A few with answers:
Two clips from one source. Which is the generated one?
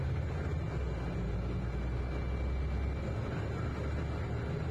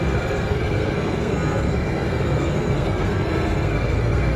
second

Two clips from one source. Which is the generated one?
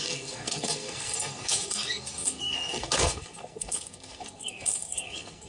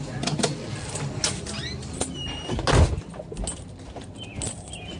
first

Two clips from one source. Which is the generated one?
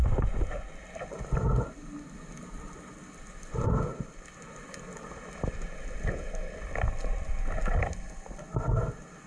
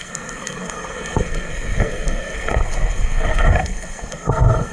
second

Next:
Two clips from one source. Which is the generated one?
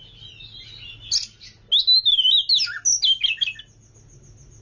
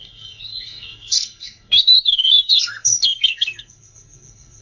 second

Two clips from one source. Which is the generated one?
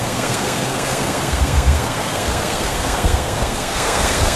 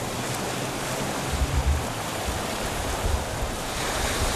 first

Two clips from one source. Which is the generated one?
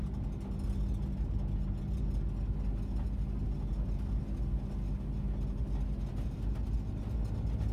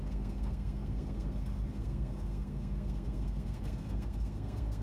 second